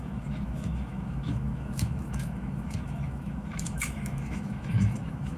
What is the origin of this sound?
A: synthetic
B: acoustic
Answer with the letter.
A